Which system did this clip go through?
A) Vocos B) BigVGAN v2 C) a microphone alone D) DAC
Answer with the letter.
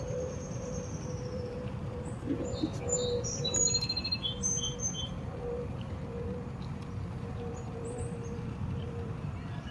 B